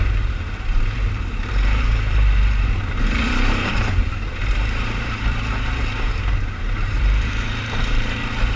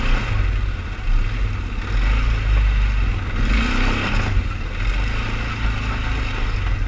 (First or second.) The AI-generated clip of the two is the first